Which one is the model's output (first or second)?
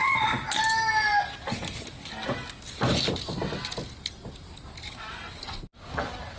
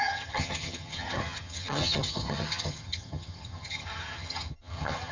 second